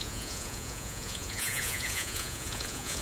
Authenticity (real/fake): fake